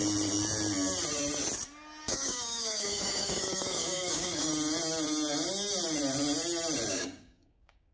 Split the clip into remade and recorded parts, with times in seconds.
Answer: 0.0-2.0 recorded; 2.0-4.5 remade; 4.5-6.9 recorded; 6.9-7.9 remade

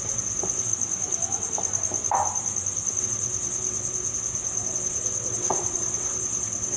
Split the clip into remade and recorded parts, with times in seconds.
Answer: 0.0-0.7 remade; 0.7-3.0 recorded; 3.0-6.8 remade